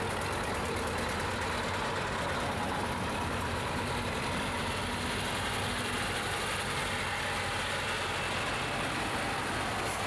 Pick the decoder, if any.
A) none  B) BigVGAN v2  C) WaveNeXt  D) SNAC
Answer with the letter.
A